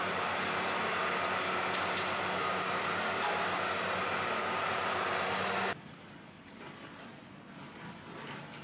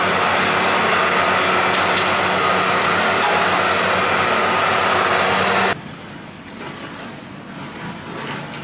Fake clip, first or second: first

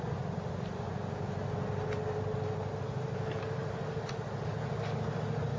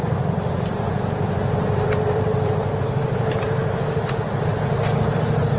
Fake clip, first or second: second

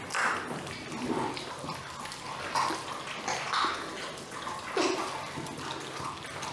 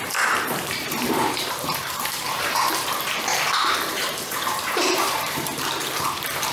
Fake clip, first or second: second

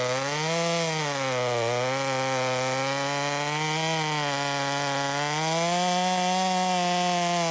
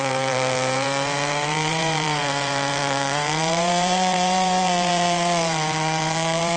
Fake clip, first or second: second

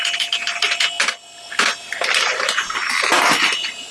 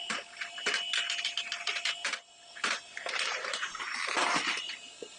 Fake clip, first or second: second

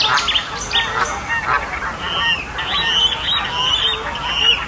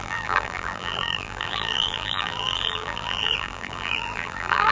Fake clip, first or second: second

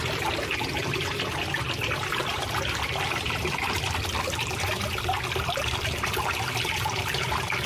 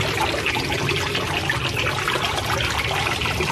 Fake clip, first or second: first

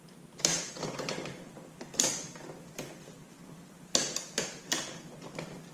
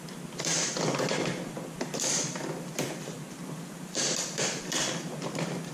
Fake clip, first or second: second